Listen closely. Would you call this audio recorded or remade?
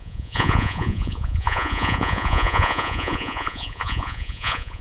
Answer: remade